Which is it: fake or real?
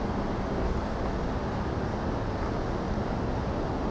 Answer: real